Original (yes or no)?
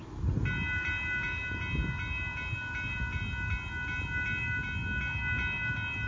yes